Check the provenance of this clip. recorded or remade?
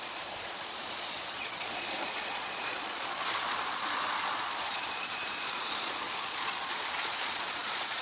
remade